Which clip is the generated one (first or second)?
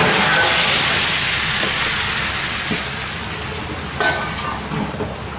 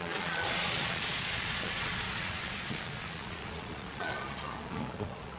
second